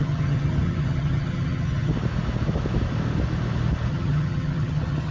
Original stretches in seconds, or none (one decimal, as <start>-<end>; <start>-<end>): 1.9-3.9